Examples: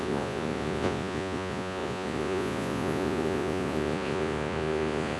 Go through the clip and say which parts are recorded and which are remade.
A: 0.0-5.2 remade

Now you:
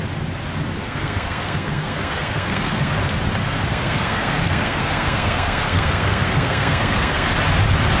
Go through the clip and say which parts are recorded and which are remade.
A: 0.0-0.8 recorded; 0.8-2.9 remade; 2.9-3.4 recorded; 3.4-7.3 remade; 7.3-8.0 recorded

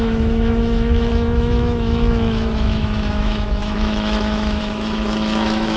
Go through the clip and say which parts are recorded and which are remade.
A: 0.0-5.8 remade